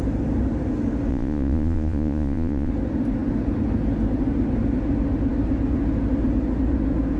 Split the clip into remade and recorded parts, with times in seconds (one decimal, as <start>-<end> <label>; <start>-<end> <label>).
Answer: 0.0-1.1 recorded; 1.1-2.7 remade; 2.7-7.2 recorded

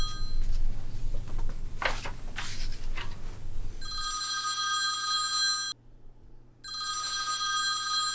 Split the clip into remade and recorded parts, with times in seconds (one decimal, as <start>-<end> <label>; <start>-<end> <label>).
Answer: 0.0-8.1 recorded

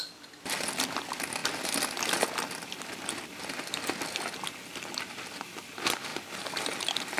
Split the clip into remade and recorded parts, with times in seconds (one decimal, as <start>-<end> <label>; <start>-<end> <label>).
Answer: 0.0-7.2 recorded

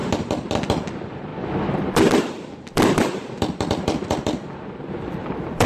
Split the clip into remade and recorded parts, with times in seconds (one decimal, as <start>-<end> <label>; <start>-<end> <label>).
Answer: 0.0-0.7 recorded; 0.7-5.7 remade

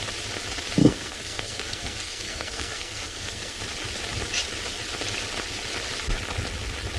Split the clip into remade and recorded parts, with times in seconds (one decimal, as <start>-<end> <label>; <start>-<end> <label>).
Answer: 0.0-0.8 recorded; 0.8-3.6 remade; 3.6-7.0 recorded

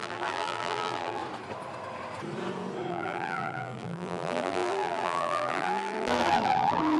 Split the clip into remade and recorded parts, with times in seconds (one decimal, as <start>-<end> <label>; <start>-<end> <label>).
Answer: 0.0-1.2 remade; 1.2-2.9 recorded; 2.9-7.0 remade